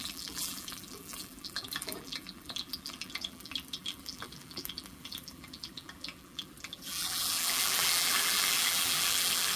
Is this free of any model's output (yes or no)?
no